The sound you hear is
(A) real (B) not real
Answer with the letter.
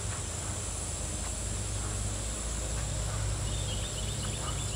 A